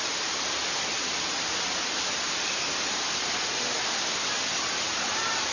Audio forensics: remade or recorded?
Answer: recorded